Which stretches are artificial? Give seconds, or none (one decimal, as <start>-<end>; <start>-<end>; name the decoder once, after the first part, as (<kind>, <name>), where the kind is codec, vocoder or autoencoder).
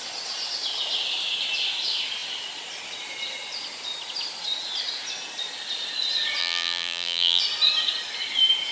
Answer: 6.4-7.4 (vocoder, BigVGAN v2)